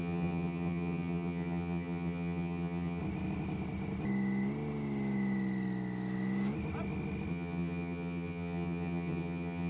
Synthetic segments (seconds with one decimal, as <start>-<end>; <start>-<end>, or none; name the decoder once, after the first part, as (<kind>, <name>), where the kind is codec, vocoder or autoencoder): 0.0-3.0 (vocoder, HiFi-GAN); 7.3-9.7